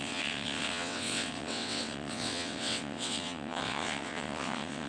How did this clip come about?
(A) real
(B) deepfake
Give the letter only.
B